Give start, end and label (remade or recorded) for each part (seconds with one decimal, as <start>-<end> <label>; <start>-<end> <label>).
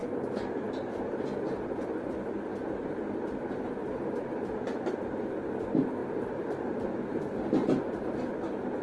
0.0-3.8 recorded; 3.8-4.9 remade; 4.9-6.0 recorded; 6.0-7.2 remade; 7.2-8.8 recorded